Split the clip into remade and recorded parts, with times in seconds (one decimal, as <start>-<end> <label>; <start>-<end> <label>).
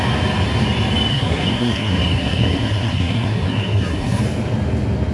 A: 0.0-1.1 recorded; 1.1-4.2 remade; 4.2-5.1 recorded